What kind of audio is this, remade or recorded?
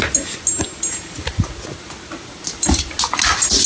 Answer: recorded